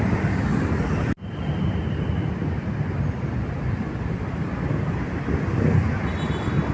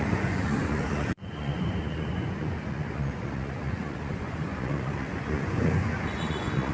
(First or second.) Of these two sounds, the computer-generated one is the second